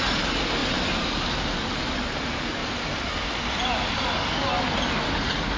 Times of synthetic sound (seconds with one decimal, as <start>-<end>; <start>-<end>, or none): none